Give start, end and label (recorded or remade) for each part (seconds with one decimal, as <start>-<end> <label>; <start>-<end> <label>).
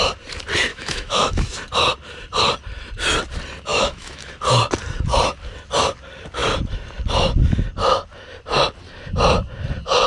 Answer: 0.0-0.7 recorded; 0.7-1.5 remade; 1.5-3.7 recorded; 3.7-4.3 remade; 4.3-10.1 recorded